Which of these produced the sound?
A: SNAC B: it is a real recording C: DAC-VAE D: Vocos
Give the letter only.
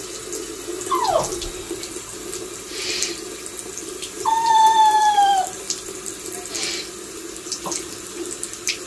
B